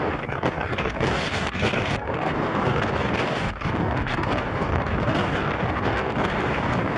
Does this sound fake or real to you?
fake